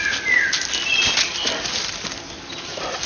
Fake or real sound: real